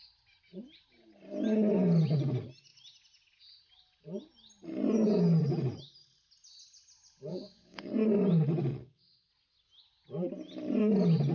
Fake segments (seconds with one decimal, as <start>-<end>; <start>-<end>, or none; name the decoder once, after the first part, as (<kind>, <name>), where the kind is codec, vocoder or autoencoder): 7.3-7.9 (vocoder, WaveNeXt); 8.7-9.3